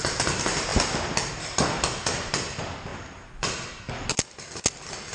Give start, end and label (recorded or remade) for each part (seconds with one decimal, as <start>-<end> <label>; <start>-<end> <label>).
0.0-5.1 recorded